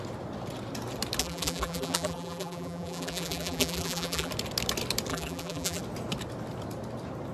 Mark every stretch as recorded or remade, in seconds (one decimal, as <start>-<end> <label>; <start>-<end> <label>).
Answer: 0.0-1.2 recorded; 1.2-4.3 remade; 4.3-5.1 recorded; 5.1-5.8 remade; 5.8-7.3 recorded